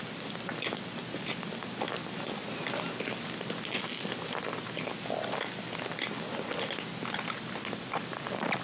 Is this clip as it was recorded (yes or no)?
yes